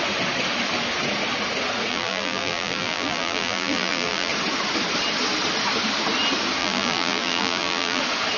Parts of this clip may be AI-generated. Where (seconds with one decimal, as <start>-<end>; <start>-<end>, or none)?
1.9-4.3; 6.6-8.0